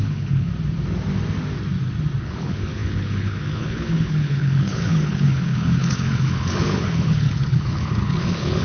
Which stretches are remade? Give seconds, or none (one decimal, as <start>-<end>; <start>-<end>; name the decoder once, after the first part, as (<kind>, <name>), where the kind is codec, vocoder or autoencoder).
0.0-0.5 (codec, HILCodec); 2.2-8.6